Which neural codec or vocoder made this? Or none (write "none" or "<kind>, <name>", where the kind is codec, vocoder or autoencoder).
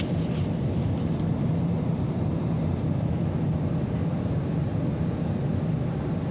vocoder, BigVGAN v2